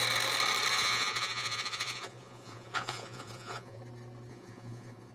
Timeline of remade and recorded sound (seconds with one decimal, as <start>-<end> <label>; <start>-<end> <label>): 0.0-0.7 recorded; 0.7-3.8 remade; 3.8-4.3 recorded; 4.3-5.1 remade

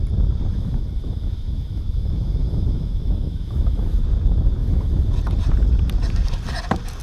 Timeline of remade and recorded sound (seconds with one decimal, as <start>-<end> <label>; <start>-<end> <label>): 0.0-0.5 recorded; 0.5-4.0 remade; 4.0-4.6 recorded; 4.6-5.1 remade; 5.1-7.0 recorded

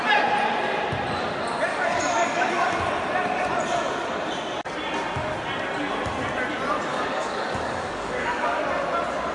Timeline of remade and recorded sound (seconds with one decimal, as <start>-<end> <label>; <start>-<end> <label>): 0.0-1.7 recorded; 1.7-2.5 remade; 2.5-6.9 recorded; 6.9-8.6 remade; 8.6-9.3 recorded

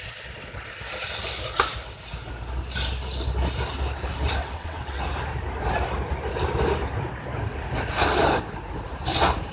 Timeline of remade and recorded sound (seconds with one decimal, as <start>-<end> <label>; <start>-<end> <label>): 0.0-4.4 recorded; 4.4-5.0 remade; 5.0-9.5 recorded

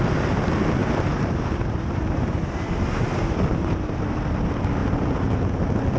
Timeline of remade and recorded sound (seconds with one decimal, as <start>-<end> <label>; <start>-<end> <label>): 0.0-0.8 recorded; 0.8-4.0 remade; 4.0-4.8 recorded; 4.8-5.6 remade; 5.6-6.0 recorded

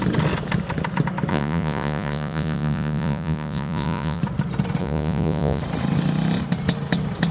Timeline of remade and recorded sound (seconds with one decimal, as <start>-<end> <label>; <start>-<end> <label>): 0.0-1.3 recorded; 1.3-4.2 remade; 4.2-4.8 recorded; 4.8-5.6 remade; 5.6-7.3 recorded